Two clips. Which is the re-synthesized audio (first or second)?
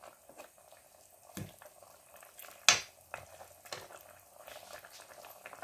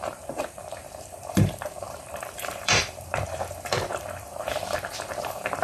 second